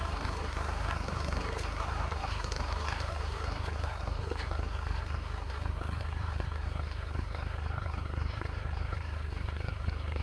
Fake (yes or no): yes